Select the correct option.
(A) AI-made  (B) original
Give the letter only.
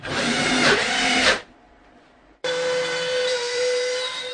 A